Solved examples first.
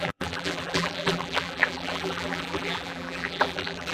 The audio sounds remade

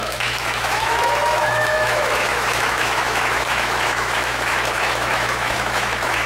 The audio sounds remade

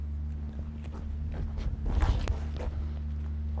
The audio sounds recorded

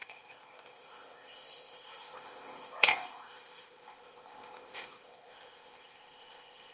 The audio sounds remade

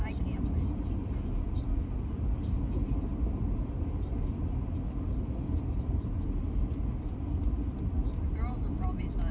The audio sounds recorded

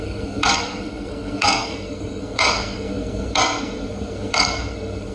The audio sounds remade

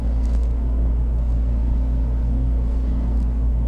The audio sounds remade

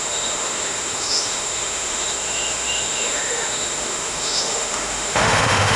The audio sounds remade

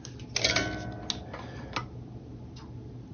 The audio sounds recorded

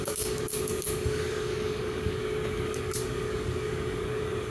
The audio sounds remade